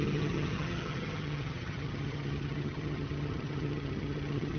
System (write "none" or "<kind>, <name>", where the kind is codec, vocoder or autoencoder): vocoder, HiFi-GAN